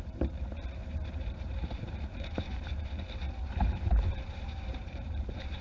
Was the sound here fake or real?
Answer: fake